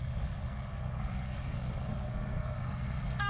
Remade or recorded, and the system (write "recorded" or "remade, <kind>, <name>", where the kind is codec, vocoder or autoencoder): remade, codec, SNAC